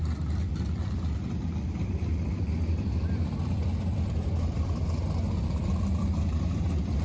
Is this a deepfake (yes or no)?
yes